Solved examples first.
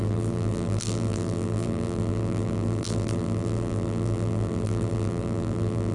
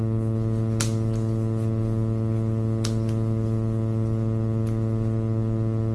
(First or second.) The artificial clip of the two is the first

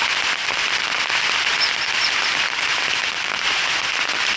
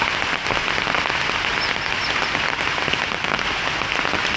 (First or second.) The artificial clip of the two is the first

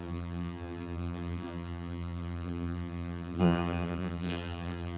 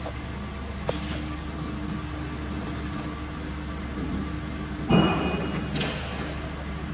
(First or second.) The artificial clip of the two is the first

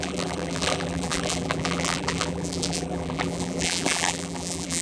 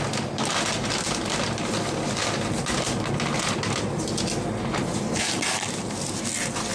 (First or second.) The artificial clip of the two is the first